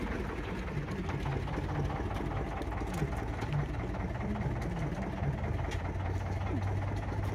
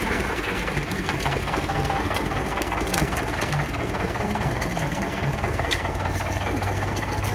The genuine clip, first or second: first